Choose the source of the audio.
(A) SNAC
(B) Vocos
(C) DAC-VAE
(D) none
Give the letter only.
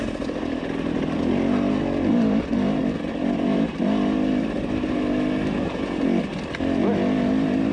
D